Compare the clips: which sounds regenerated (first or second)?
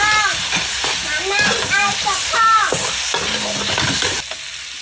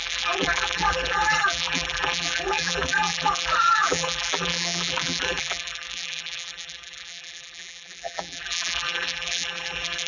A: second